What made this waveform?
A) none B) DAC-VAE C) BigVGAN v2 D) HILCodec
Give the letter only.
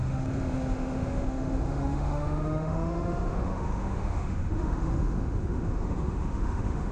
B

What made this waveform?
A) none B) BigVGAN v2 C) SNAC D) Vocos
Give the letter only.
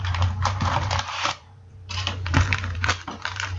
B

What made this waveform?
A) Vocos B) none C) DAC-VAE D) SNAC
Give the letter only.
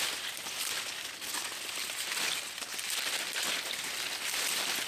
B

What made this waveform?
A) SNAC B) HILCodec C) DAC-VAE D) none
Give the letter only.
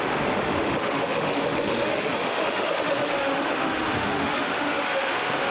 C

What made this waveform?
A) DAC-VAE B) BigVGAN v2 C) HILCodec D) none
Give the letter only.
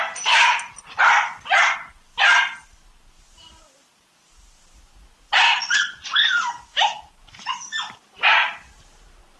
D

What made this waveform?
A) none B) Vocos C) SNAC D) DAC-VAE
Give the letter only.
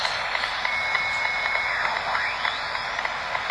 A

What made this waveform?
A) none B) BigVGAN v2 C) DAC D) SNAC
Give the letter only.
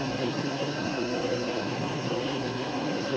D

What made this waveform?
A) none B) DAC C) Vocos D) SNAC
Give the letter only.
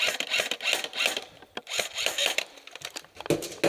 A